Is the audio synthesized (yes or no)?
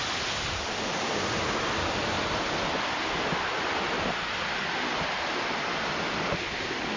no